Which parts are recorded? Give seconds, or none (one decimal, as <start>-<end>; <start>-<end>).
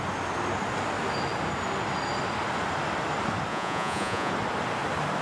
0.0-3.5; 4.3-5.2